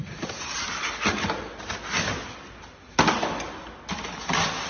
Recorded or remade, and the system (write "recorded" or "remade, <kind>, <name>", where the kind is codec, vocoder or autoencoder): recorded